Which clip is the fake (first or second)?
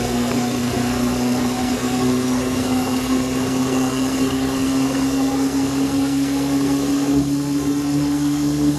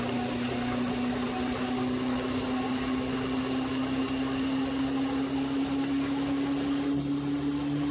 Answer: first